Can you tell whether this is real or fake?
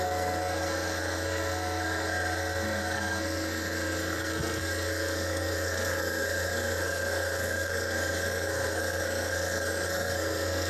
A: fake